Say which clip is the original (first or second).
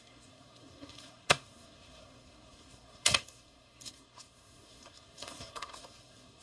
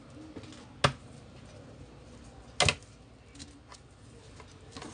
second